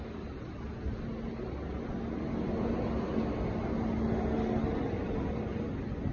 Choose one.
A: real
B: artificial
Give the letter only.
A